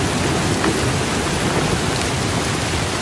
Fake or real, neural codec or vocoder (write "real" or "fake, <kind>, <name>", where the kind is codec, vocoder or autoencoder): real